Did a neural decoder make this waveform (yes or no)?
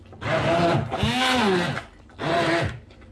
no